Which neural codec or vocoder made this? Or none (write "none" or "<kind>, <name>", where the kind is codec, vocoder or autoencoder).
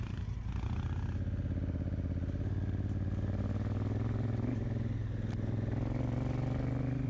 none